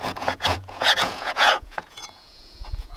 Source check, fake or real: fake